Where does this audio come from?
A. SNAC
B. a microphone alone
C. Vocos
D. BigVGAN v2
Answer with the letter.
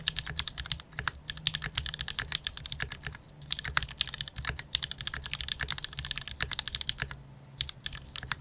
B